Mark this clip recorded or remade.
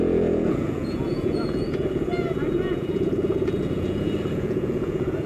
remade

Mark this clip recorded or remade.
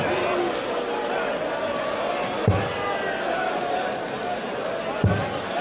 recorded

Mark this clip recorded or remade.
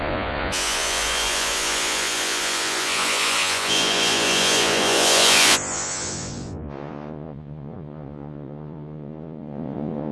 remade